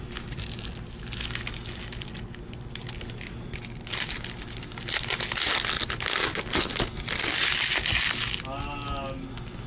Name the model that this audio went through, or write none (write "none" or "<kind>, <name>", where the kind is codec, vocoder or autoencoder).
none